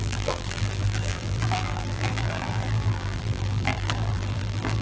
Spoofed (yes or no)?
yes